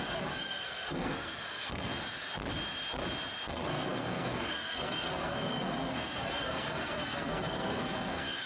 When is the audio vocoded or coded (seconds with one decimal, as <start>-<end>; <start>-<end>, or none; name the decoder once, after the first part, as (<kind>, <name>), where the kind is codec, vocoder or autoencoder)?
0.0-1.9 (codec, SNAC); 3.5-8.5